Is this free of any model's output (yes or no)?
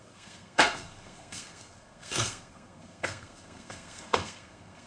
no